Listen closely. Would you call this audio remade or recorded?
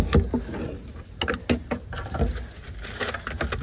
recorded